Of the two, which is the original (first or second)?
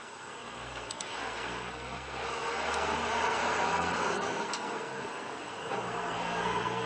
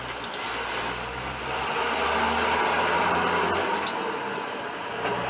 second